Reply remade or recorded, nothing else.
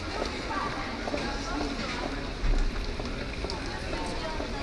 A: recorded